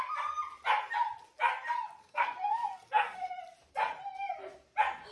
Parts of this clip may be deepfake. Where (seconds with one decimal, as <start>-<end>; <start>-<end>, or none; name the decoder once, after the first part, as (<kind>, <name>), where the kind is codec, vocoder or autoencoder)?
2.0-3.3 (codec, SNAC)